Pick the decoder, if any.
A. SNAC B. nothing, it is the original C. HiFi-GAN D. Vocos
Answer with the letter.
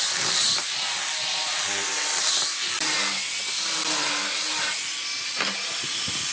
B